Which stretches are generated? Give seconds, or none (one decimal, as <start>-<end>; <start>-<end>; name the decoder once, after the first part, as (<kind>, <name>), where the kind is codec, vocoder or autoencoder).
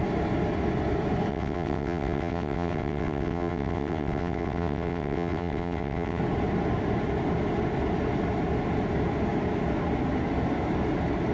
1.3-6.2 (vocoder, WaveNeXt)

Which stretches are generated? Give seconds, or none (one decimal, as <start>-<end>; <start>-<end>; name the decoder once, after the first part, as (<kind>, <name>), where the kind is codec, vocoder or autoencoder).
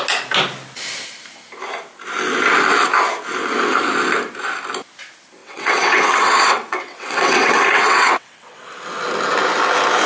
5.4-8.7 (vocoder, WaveNeXt)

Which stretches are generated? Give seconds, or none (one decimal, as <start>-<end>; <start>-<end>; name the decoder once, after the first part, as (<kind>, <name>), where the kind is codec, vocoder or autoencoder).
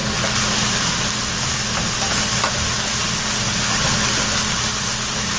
none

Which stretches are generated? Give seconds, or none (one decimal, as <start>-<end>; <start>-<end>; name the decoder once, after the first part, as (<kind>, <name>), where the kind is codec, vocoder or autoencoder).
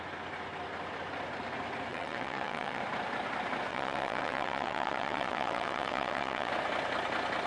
1.9-2.8 (vocoder, WaveNeXt); 3.7-6.5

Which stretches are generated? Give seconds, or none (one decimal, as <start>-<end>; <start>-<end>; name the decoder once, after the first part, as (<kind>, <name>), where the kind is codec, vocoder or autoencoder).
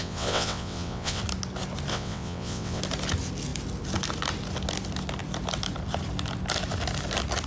0.0-1.2 (vocoder, WaveNeXt); 1.9-2.8